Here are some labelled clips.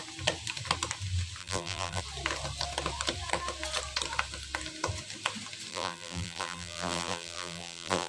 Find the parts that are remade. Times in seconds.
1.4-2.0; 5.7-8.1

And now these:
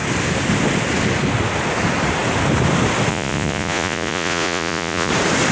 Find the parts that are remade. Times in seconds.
3.1-5.1

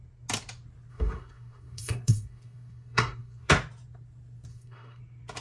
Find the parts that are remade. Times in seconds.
0.9-3.5; 4.5-5.0

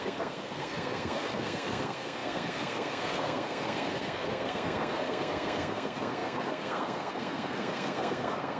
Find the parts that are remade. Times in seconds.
0.0-8.6